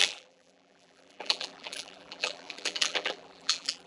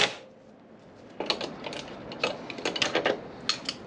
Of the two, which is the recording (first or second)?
second